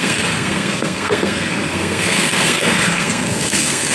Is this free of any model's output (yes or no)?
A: no